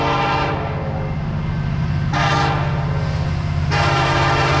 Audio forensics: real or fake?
real